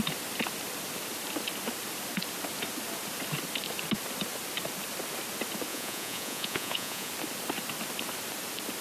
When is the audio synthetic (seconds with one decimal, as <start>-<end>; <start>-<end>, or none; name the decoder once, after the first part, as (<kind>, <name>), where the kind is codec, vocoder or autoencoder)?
5.7-7.1 (vocoder, Vocos)